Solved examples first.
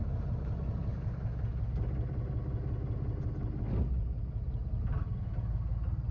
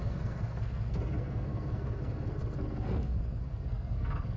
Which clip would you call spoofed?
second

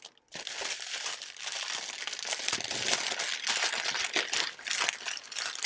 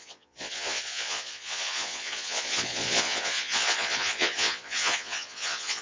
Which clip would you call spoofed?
second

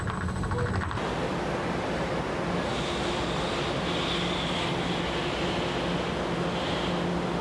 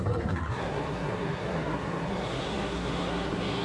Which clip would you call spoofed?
second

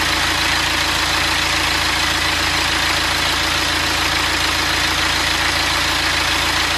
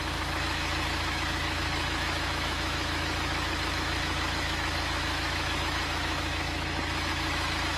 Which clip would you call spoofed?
second